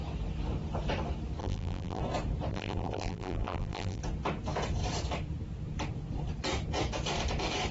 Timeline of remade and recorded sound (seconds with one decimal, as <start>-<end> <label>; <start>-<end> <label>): 0.0-1.4 recorded; 1.4-2.0 remade; 2.0-2.5 recorded; 2.5-4.0 remade; 4.0-7.7 recorded